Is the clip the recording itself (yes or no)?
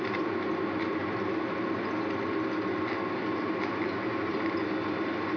yes